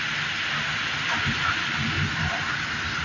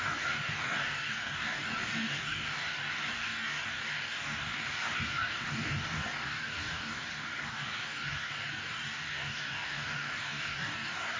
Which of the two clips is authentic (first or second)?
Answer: first